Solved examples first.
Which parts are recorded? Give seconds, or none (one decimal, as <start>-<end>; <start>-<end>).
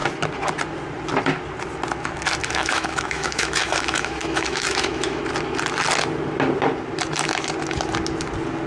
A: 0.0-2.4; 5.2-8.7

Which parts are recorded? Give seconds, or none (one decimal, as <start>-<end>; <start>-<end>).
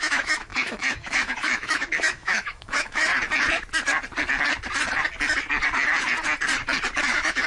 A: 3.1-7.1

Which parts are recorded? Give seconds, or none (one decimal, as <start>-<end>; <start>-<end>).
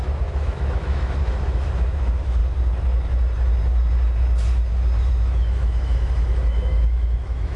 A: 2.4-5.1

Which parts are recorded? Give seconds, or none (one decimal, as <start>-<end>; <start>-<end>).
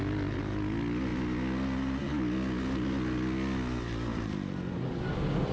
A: 0.0-5.5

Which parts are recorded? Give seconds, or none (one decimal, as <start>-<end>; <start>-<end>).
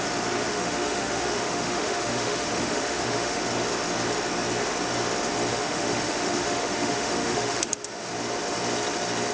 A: 0.0-0.5; 3.4-5.5; 8.1-9.3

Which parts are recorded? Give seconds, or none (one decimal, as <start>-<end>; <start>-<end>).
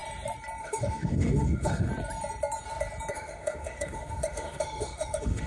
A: 0.0-0.6; 1.9-3.1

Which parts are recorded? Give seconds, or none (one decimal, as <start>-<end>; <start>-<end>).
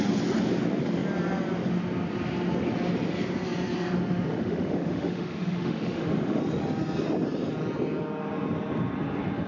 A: 0.0-4.3; 6.4-9.5